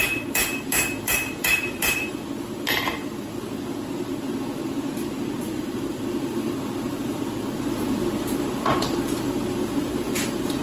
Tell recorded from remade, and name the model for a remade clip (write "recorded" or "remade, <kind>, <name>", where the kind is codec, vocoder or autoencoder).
remade, vocoder, BigVGAN v2